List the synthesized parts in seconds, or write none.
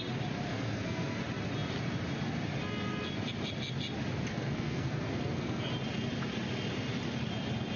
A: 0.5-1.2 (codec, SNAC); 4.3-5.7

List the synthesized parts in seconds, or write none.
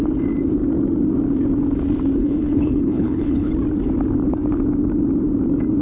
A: 2.2-3.5 (codec, HILCodec)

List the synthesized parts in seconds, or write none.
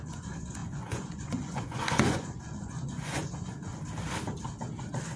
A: 0.0-3.7 (vocoder, Vocos)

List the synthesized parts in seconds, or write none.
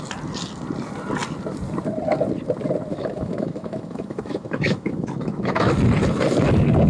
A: 2.9-5.7 (autoencoder, DAC-VAE)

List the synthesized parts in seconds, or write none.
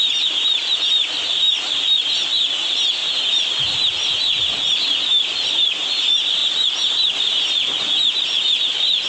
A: 0.0-3.0 (vocoder, BigVGAN v2); 5.5-9.1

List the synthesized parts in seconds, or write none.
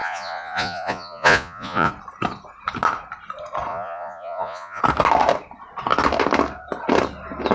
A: 0.0-1.9 (vocoder, Vocos); 3.7-4.8